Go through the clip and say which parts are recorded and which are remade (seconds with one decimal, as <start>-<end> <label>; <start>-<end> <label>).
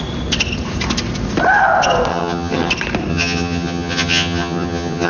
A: 0.0-2.1 recorded; 2.1-2.7 remade; 2.7-3.1 recorded; 3.1-5.1 remade